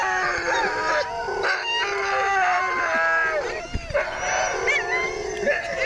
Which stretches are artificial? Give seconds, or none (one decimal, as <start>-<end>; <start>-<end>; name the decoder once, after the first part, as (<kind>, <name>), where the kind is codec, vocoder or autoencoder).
none